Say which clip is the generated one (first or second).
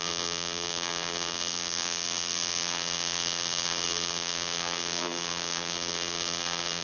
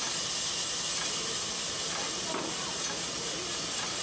first